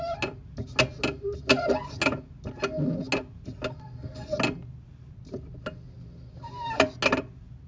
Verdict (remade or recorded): recorded